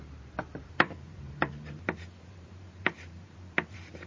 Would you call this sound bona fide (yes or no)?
no